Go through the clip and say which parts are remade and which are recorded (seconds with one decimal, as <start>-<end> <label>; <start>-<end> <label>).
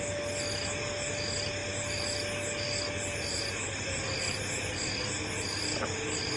0.0-6.4 recorded